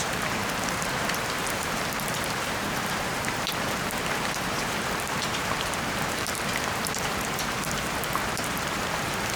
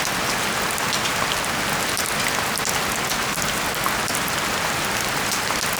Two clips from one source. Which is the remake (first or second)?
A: first